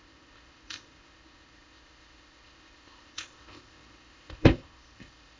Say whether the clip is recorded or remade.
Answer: remade